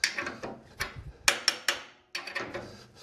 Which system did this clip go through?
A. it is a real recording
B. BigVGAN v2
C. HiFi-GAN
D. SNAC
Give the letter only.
A